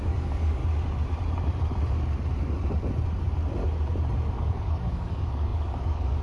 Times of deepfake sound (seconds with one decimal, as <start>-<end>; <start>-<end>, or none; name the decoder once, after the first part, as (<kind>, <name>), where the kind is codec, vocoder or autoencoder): 0.0-0.6 (codec, DAC); 4.3-6.2